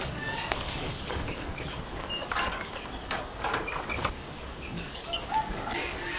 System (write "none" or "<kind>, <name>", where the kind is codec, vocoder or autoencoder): codec, DAC